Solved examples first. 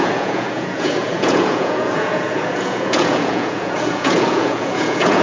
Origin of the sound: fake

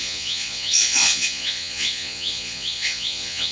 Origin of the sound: fake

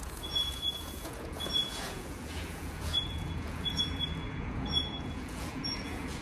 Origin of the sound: fake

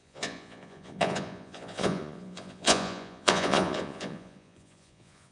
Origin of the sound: fake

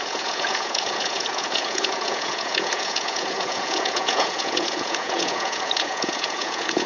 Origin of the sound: fake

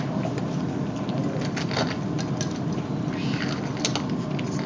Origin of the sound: real